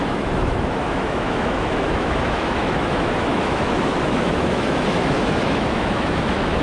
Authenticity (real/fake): fake